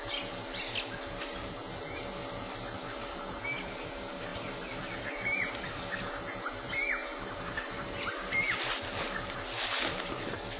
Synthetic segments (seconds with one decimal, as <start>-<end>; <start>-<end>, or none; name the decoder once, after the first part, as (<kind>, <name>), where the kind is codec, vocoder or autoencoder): 4.3-5.5 (vocoder, BigVGAN v2)